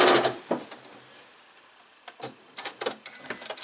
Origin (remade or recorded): recorded